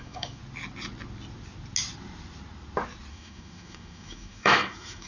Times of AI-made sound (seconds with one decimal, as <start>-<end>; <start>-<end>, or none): 0.0-0.4; 3.1-5.1